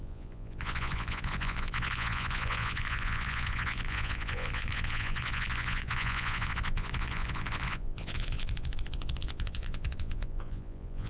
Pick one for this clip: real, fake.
fake